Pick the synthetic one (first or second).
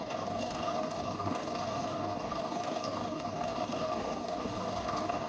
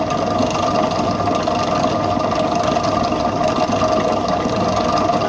first